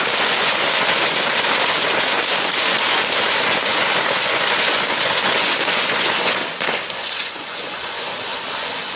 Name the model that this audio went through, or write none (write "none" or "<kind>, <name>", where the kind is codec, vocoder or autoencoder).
vocoder, Vocos